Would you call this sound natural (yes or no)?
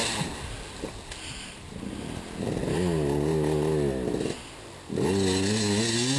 yes